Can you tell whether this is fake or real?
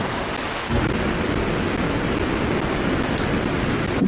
real